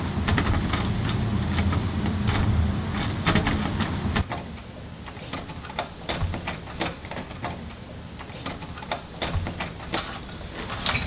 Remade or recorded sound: recorded